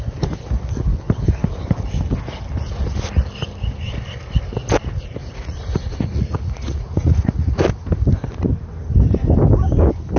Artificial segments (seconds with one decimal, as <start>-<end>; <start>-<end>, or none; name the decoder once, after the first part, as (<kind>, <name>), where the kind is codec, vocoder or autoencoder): 5.2-7.6 (vocoder, Vocos)

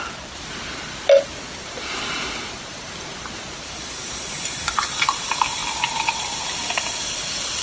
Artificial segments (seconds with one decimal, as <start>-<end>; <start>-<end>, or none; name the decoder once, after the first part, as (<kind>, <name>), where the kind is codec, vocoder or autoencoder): none

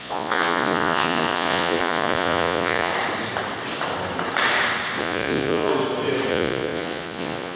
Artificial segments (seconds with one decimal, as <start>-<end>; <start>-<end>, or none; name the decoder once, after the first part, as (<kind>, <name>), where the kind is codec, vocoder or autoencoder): 0.0-2.9 (vocoder, Vocos); 5.0-5.7; 6.3-7.6

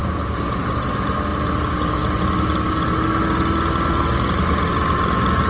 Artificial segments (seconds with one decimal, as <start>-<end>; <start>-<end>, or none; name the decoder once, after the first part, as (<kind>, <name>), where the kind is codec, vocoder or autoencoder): none

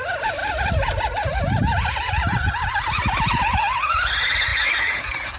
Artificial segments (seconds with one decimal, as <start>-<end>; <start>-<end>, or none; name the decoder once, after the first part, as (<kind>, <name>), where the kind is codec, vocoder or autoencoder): none

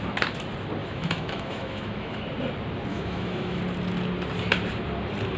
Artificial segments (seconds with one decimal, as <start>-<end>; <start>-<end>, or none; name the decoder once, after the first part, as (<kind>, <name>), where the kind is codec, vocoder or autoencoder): 0.8-2.2 (autoencoder, DAC-VAE); 2.9-3.6

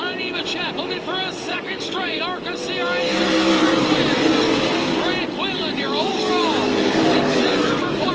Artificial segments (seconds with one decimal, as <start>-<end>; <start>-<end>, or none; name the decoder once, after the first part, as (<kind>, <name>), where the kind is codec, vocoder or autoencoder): 1.5-2.2 (codec, DAC); 6.1-8.1